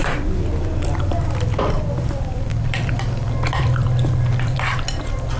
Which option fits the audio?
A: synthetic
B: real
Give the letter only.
A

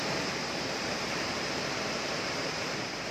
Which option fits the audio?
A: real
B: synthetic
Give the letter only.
B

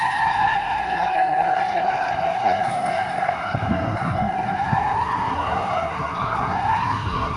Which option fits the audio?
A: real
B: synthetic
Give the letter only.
B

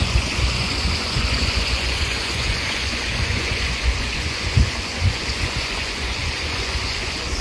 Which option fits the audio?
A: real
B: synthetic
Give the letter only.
B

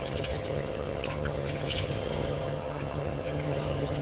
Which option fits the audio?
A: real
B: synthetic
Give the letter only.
B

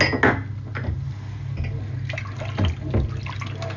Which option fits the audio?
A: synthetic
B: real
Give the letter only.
B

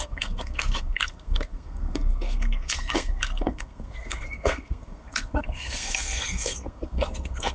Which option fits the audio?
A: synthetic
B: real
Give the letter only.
A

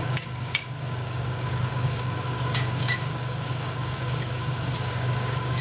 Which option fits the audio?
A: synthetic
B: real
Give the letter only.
A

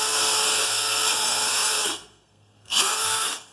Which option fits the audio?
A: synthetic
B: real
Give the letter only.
A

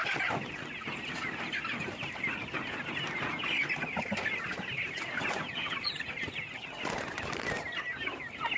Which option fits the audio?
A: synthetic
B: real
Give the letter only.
B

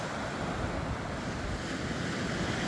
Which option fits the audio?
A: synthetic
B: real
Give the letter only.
B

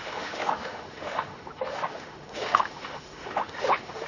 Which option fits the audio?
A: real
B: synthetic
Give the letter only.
B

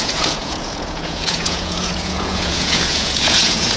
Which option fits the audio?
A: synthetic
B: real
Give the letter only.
A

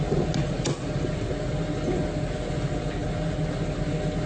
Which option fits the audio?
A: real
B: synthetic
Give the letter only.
A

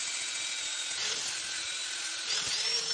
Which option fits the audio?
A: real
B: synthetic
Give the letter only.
A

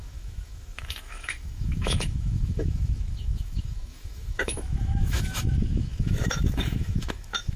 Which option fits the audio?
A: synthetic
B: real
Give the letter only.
A